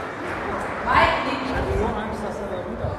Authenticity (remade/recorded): recorded